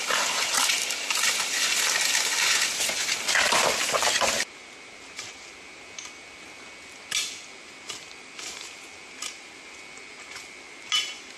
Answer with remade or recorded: recorded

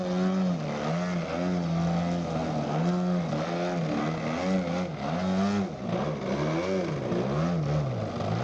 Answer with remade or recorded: recorded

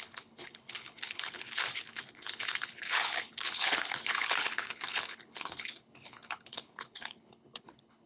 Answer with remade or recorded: remade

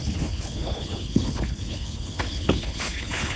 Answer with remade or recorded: remade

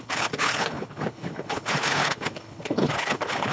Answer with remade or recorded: remade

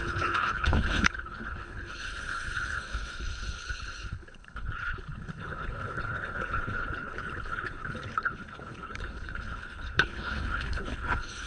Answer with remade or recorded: remade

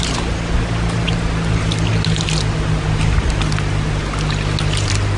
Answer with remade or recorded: recorded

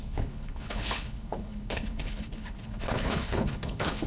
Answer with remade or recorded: remade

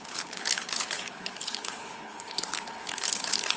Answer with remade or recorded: remade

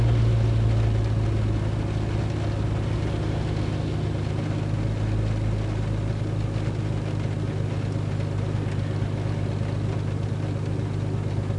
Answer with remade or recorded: recorded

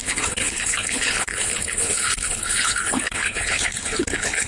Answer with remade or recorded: remade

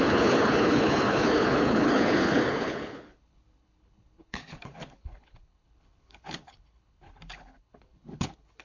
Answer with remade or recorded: remade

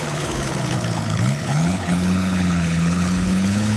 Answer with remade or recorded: remade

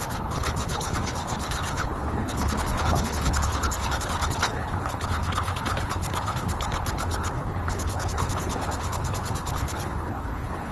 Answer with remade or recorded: remade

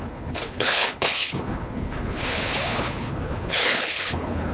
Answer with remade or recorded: remade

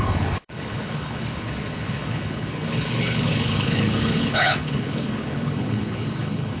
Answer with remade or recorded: remade